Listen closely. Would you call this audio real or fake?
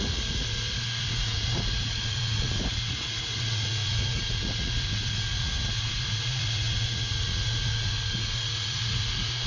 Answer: fake